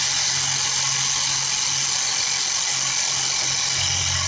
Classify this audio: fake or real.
real